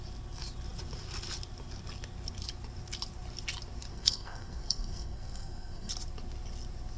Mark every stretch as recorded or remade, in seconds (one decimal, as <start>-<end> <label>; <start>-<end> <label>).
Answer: 0.0-3.9 recorded; 3.9-5.9 remade; 5.9-7.0 recorded